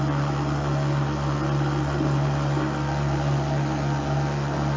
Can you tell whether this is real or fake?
real